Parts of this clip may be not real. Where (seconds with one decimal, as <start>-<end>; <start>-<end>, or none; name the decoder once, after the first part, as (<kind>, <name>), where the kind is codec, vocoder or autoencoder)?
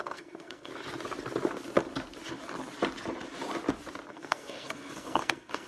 0.0-0.7 (codec, SNAC); 4.1-5.7